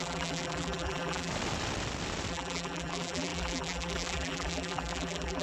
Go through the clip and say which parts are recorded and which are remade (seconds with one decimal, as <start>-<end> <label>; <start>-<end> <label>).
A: 0.0-1.3 remade; 1.3-2.3 recorded; 2.3-5.4 remade